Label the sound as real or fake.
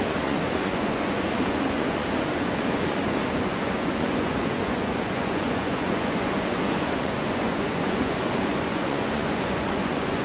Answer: fake